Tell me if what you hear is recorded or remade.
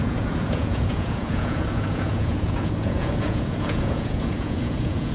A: remade